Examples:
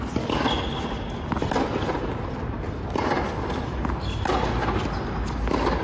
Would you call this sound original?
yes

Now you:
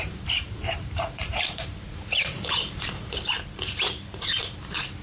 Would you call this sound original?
no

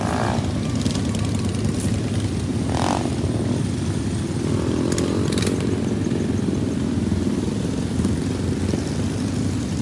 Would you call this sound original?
yes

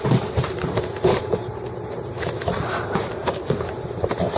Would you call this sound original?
no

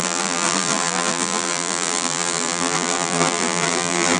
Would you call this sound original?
no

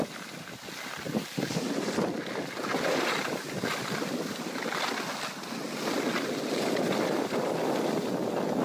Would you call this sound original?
yes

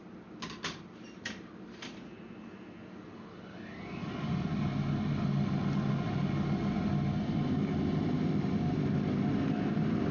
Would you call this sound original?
yes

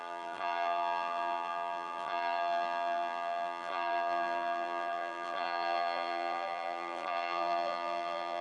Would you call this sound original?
no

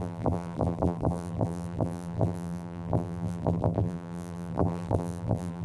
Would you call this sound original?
no